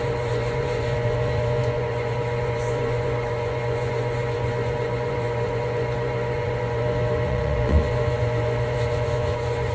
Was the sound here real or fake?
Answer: fake